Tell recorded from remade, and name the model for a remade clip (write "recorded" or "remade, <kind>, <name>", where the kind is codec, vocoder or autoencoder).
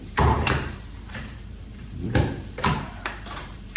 remade, vocoder, BigVGAN v2